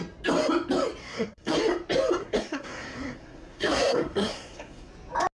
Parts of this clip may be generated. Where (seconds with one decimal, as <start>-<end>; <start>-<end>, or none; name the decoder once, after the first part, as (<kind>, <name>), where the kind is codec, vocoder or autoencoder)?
1.0-1.6 (codec, SNAC); 2.2-4.9